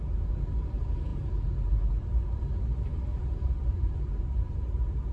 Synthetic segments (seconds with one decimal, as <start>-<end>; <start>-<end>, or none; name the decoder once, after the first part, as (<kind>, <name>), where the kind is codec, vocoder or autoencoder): none